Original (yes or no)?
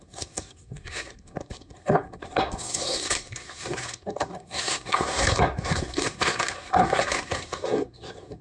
no